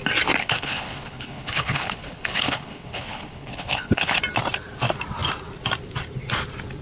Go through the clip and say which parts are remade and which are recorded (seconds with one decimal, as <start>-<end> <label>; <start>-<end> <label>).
0.0-0.4 recorded; 0.4-4.2 remade; 4.2-6.8 recorded

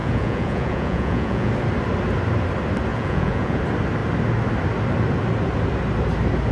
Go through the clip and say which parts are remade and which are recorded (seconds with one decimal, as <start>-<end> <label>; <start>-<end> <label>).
0.0-1.5 remade; 1.5-2.9 recorded; 2.9-3.6 remade; 3.6-6.5 recorded

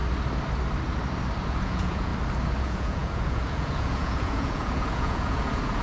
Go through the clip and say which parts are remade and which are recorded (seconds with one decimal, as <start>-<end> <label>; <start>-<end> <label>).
0.0-1.5 recorded; 1.5-2.1 remade; 2.1-2.6 recorded; 2.6-5.8 remade

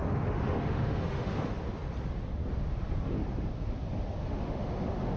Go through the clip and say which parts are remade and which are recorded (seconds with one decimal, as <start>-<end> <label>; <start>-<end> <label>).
0.0-1.4 remade; 1.4-4.2 recorded; 4.2-5.2 remade

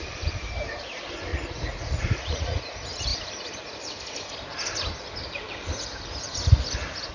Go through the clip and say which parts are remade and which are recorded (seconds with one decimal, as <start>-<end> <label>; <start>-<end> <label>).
0.0-1.3 recorded; 1.3-2.6 remade; 2.6-7.1 recorded

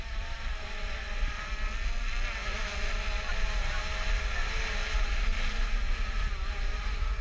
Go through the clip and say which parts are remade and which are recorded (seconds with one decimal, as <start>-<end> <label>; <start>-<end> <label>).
0.0-1.0 remade; 1.0-3.3 recorded; 3.3-3.9 remade; 3.9-7.2 recorded

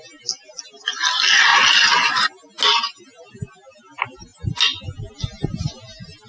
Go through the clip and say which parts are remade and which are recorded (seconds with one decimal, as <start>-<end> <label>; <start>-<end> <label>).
0.0-6.3 recorded